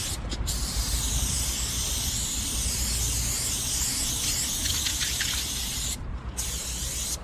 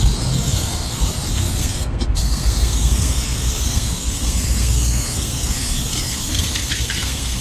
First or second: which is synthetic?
second